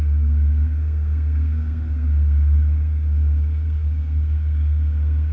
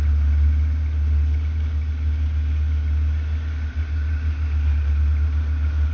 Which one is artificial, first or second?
first